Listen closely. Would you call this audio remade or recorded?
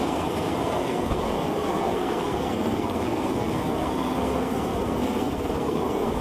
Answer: remade